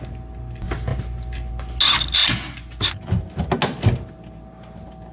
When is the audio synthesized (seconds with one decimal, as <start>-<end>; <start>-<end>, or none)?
none